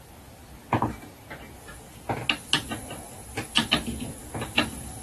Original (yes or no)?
yes